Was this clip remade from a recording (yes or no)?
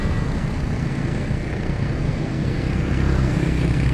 yes